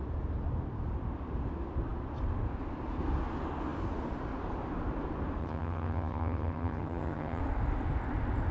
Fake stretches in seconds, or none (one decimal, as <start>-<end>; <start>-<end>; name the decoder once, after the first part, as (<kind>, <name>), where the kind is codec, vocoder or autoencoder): 5.4-7.4 (vocoder, HiFi-GAN)